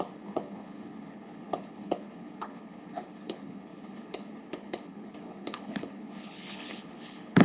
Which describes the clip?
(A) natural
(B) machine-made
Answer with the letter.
B